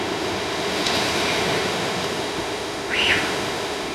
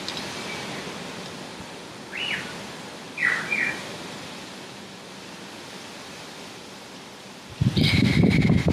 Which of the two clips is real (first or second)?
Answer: second